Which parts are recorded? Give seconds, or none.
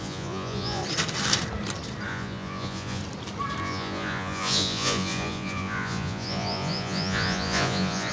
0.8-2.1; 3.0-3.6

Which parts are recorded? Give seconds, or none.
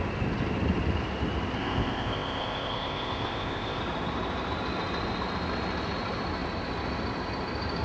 0.0-1.6; 3.8-7.8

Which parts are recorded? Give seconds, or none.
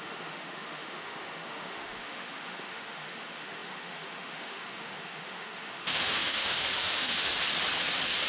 7.3-8.3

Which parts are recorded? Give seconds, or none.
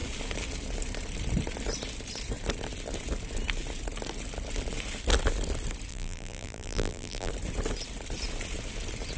0.0-5.9; 7.3-9.2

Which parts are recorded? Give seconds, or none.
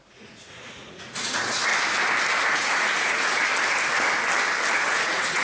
1.7-2.4; 3.5-4.7